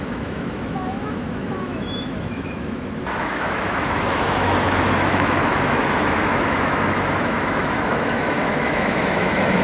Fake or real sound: fake